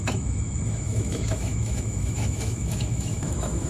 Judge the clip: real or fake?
fake